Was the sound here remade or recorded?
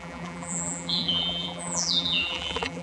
remade